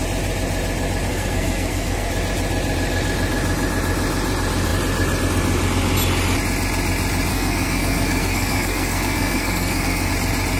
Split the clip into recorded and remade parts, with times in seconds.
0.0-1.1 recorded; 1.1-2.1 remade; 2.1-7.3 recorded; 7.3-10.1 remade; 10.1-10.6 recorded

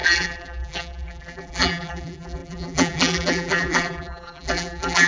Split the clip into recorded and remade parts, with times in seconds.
0.0-5.1 remade

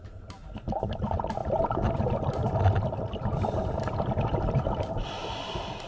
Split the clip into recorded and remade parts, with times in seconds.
0.0-5.9 recorded